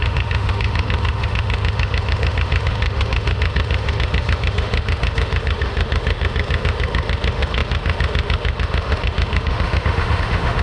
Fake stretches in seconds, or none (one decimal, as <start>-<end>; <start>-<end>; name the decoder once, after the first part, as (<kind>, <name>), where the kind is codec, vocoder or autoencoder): 0.0-10.6 (autoencoder, DAC-VAE)